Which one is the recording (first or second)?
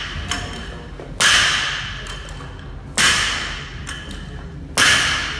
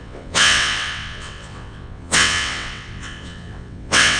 first